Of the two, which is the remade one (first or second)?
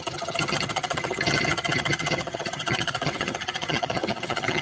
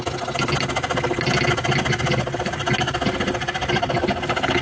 first